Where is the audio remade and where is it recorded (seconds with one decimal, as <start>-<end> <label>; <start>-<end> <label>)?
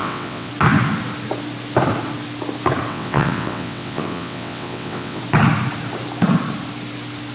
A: 0.0-0.5 remade; 0.5-2.9 recorded; 2.9-5.2 remade; 5.2-7.3 recorded